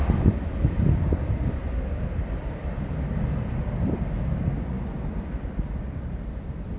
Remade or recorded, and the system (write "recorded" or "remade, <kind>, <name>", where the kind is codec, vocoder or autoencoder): recorded